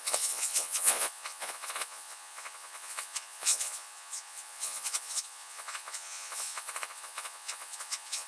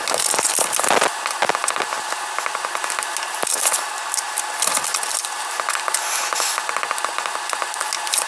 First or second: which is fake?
first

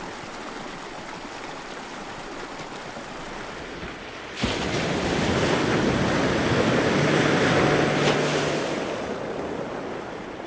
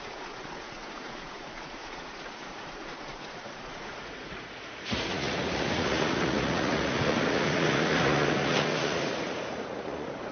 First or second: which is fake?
second